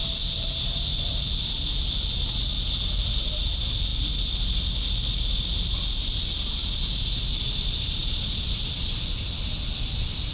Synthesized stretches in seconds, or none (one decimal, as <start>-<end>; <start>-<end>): none